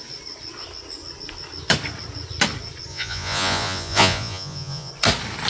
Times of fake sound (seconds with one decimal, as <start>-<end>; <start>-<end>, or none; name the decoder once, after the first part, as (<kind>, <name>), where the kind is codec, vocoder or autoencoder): 2.9-4.9 (vocoder, Vocos)